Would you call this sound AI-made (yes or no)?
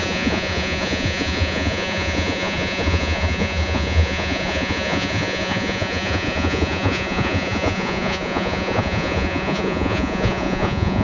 yes